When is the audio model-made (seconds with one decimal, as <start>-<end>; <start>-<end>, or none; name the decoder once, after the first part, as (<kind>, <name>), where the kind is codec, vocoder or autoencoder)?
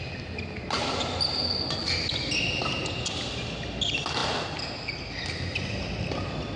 none